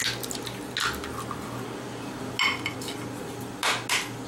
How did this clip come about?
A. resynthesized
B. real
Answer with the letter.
B